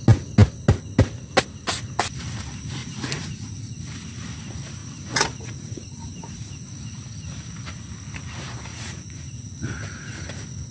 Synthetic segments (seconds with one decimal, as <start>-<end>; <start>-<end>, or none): 2.8-3.7; 4.8-6.8; 8.7-9.3